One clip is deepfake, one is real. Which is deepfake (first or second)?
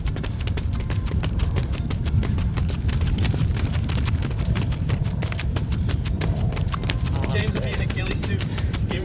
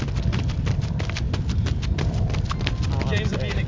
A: first